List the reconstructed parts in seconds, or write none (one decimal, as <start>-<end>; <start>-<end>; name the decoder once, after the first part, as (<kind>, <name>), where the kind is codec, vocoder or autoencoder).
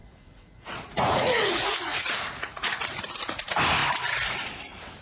0.0-3.0 (vocoder, Vocos)